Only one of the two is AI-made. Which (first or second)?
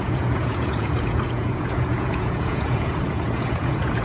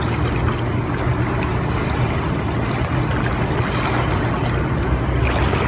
first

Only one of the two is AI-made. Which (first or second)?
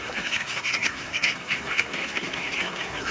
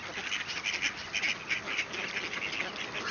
first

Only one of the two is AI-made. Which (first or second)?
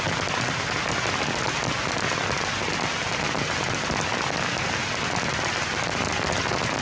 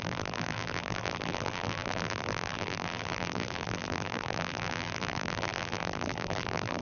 second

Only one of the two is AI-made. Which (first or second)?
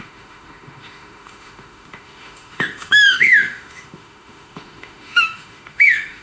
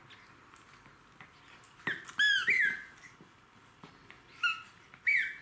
first